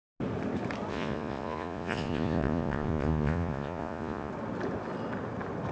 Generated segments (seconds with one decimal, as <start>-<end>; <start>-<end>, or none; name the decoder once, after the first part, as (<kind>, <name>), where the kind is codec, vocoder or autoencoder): 0.9-4.3 (vocoder, Vocos)